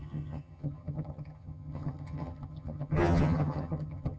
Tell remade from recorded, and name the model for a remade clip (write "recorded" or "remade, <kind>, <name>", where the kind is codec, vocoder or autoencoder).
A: remade, vocoder, HiFi-GAN